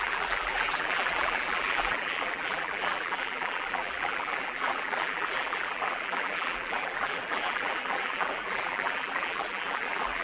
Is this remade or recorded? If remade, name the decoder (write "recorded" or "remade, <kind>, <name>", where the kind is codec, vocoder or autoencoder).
remade, vocoder, BigVGAN v2